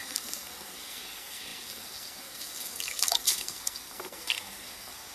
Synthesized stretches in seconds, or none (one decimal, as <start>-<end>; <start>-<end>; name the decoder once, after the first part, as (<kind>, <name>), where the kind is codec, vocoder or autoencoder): 0.0-5.1 (codec, SNAC)